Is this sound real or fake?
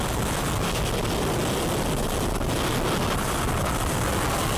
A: real